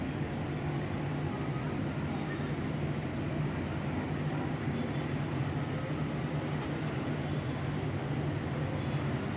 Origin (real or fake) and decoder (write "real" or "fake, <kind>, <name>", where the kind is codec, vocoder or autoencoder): real